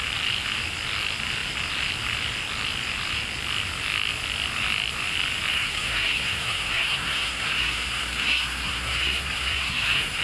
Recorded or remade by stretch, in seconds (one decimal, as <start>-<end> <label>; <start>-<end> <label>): 0.0-5.5 recorded; 5.5-10.2 remade

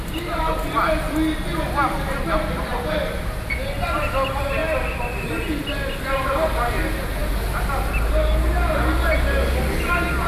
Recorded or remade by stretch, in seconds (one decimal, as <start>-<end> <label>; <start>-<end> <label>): 0.0-10.3 recorded

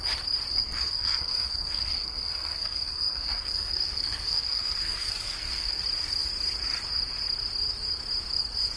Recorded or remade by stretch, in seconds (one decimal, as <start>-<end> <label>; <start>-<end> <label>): 0.0-0.5 recorded; 0.5-5.8 remade; 5.8-8.8 recorded

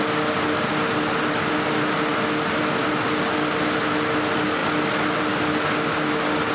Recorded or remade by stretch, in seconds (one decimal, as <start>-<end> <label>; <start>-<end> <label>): 0.0-6.5 recorded

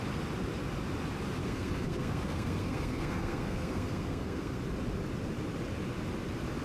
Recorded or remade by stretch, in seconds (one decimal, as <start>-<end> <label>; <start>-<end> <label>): 0.0-1.4 recorded; 1.4-4.6 remade; 4.6-6.6 recorded

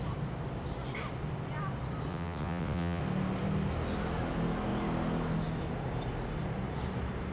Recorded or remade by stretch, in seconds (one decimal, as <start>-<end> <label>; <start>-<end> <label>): 0.0-2.1 recorded; 2.1-3.0 remade; 3.0-7.3 recorded

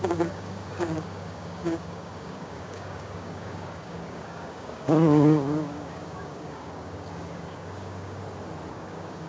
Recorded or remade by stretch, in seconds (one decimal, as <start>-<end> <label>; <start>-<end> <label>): 0.0-8.2 remade; 8.2-8.7 recorded; 8.7-9.3 remade

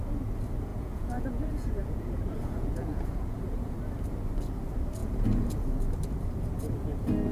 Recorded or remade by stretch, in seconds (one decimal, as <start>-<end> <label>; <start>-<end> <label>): 0.0-0.7 recorded; 0.7-3.7 remade; 3.7-5.0 recorded; 5.0-5.6 remade; 5.6-7.3 recorded